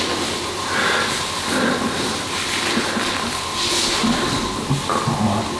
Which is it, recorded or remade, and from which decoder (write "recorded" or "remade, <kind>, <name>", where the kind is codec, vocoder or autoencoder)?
recorded